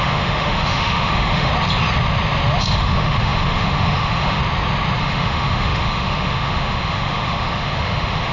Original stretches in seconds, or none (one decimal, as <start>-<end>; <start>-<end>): 1.5-2.6; 4.4-5.0